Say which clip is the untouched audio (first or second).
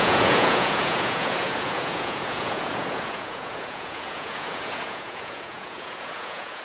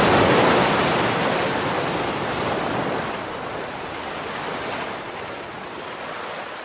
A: second